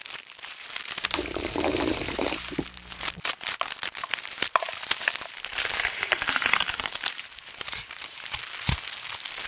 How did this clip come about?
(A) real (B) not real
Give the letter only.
B